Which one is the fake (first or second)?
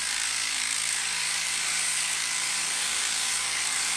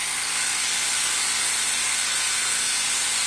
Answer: first